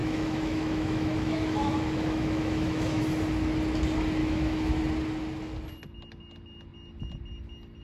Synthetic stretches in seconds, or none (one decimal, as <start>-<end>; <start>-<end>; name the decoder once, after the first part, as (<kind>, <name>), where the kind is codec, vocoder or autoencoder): 0.0-3.0 (autoencoder, DAC-VAE); 4.2-4.8